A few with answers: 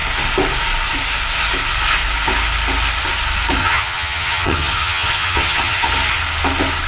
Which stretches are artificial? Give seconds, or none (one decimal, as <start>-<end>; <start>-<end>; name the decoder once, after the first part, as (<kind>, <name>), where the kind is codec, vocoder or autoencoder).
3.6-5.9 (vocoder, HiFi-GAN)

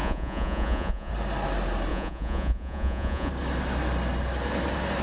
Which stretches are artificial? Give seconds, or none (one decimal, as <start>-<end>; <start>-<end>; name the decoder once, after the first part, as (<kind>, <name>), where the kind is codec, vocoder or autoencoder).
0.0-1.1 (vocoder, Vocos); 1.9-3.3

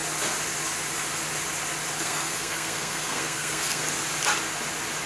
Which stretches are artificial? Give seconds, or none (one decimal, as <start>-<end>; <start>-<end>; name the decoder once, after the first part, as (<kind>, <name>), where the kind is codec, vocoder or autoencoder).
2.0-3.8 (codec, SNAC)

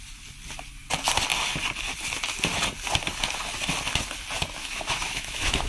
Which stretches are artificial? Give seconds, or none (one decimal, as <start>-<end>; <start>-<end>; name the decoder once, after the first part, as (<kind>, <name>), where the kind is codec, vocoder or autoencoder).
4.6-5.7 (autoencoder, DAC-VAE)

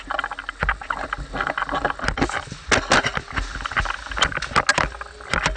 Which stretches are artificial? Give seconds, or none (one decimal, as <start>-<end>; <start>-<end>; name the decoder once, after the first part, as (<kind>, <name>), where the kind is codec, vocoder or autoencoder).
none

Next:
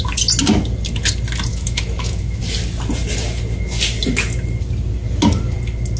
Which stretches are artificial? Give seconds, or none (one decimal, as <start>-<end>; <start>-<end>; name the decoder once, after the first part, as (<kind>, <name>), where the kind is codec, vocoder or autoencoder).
1.5-2.4 (autoencoder, DAC-VAE)